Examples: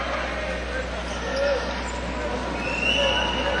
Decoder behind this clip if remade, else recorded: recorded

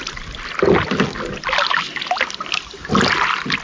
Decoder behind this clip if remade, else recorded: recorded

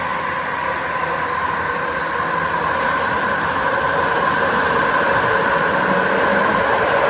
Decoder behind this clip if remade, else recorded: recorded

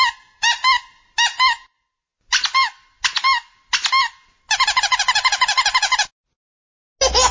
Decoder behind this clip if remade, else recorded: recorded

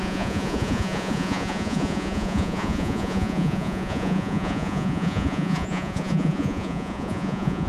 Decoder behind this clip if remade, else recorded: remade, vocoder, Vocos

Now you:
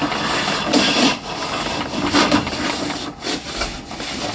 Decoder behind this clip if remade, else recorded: recorded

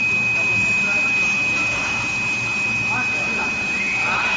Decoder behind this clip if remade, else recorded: recorded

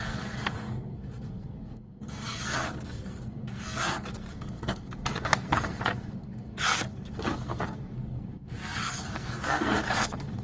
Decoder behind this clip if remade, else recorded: remade, codec, SNAC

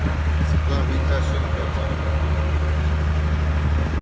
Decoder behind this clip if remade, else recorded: recorded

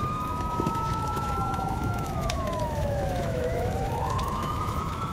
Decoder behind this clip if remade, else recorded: remade, autoencoder, DAC-VAE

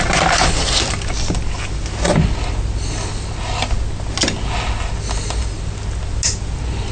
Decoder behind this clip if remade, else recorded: recorded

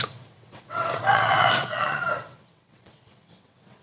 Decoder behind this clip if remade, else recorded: remade, vocoder, WaveNeXt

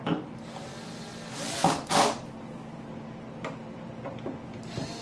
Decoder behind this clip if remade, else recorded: recorded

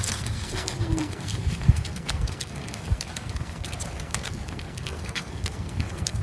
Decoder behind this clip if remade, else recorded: remade, codec, SNAC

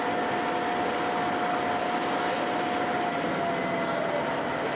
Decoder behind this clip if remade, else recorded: recorded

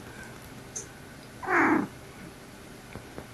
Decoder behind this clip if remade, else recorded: recorded